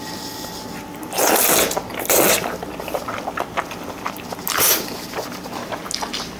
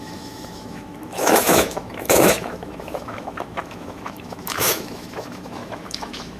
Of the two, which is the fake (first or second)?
second